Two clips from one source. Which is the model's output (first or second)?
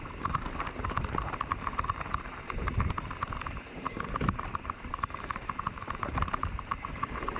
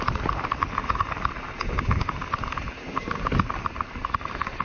first